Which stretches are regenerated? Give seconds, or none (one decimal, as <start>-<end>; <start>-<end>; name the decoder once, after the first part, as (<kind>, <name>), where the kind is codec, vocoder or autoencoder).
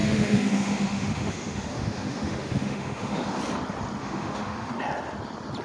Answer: 0.0-3.4 (autoencoder, DAC-VAE); 4.0-4.7